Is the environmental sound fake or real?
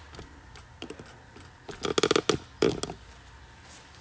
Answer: real